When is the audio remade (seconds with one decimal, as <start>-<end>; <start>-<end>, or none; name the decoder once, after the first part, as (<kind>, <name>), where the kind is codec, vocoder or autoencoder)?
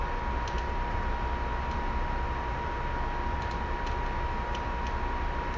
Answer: none